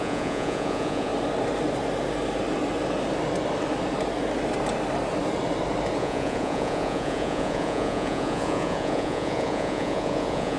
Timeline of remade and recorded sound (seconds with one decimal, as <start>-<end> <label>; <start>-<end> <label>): 0.0-1.1 remade; 1.1-6.0 recorded; 6.0-10.6 remade